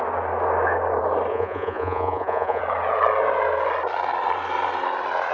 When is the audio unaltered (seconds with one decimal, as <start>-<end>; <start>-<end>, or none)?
0.0-1.3; 2.6-5.3